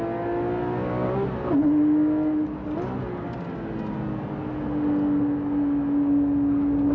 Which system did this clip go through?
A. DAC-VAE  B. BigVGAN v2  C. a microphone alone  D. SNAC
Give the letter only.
C